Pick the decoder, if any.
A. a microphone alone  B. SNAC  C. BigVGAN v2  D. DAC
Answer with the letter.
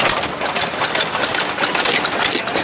A